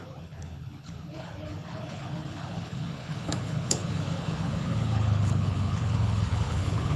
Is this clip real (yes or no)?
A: no